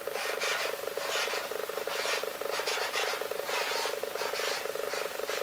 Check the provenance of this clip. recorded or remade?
recorded